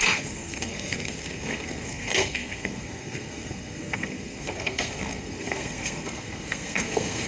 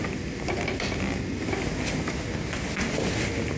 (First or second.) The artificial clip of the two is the first